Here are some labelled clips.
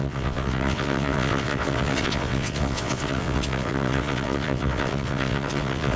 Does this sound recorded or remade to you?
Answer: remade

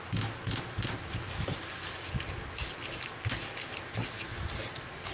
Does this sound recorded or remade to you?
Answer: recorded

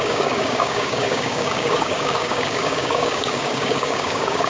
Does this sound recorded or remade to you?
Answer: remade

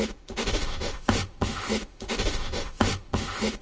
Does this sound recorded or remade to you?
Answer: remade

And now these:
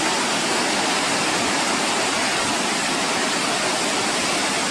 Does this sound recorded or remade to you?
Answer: recorded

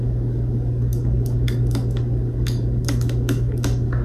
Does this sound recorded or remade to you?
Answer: remade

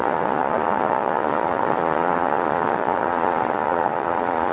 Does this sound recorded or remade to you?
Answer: remade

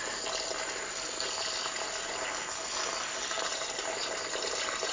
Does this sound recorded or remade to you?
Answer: recorded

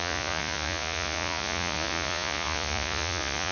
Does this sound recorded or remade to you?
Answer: remade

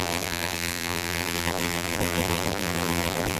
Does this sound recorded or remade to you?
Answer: remade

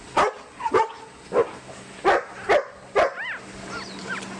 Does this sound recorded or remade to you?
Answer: recorded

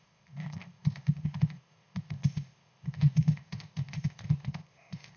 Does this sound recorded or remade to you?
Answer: remade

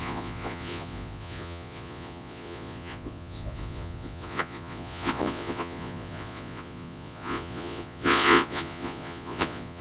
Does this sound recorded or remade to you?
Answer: remade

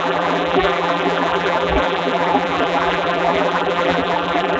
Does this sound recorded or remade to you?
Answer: remade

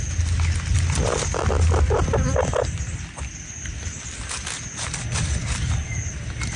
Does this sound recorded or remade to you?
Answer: recorded